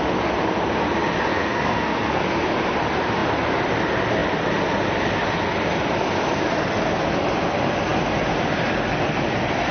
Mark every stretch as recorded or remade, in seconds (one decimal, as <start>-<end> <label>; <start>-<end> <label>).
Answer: 0.0-1.3 recorded; 1.3-2.2 remade; 2.2-9.7 recorded